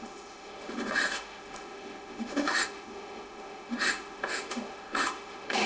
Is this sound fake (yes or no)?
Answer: yes